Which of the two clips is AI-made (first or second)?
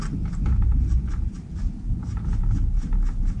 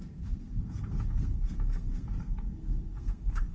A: second